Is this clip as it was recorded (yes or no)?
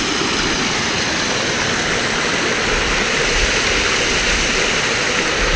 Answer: yes